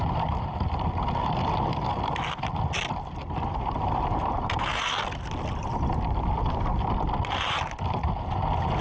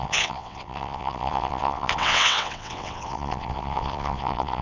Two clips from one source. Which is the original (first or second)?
first